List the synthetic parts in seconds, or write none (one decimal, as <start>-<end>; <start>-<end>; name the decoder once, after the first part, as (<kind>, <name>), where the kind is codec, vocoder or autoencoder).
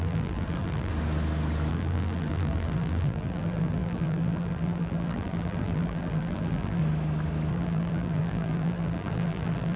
0.0-0.9 (vocoder, BigVGAN v2); 1.7-6.8; 7.5-9.8